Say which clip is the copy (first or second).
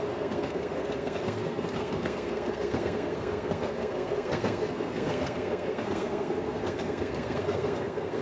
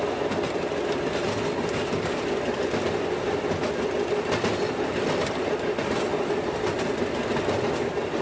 first